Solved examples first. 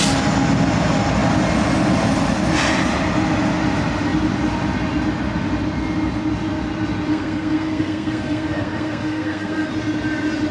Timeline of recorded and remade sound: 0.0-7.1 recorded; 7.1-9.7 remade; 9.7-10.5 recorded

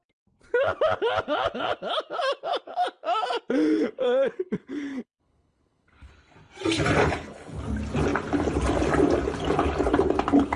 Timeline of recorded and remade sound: 0.0-3.7 recorded; 3.7-6.1 remade; 6.1-7.0 recorded; 7.0-7.6 remade; 7.6-10.6 recorded

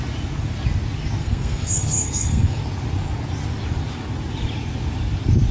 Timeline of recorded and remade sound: 0.0-1.2 recorded; 1.2-2.6 remade; 2.6-5.5 recorded